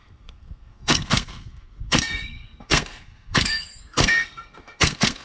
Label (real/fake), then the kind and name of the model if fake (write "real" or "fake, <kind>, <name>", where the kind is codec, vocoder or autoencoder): fake, codec, SNAC